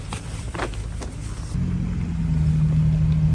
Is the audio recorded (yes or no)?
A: yes